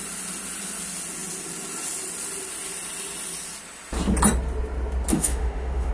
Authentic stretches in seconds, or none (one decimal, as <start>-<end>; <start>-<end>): 0.0-5.1